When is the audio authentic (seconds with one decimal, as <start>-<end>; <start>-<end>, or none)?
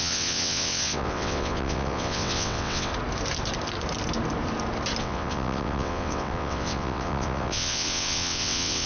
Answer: 2.9-5.0